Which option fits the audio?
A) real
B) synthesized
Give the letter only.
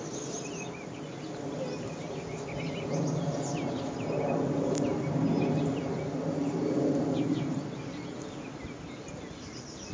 A